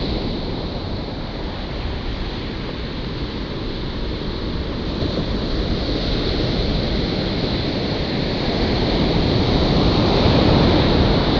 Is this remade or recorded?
recorded